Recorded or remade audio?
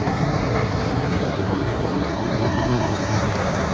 remade